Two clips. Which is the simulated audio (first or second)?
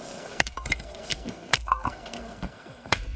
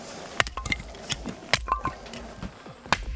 first